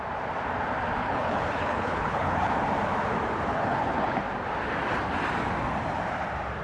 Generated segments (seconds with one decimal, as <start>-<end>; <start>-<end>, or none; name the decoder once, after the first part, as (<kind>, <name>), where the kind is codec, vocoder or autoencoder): 1.0-2.5 (codec, HILCodec); 3.5-4.2